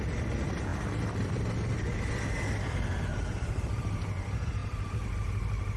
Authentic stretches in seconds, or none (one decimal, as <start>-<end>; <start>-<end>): 0.0-0.7; 1.3-3.1; 3.8-4.6